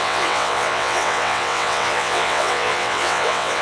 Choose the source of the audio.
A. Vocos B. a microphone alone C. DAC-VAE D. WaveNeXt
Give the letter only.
D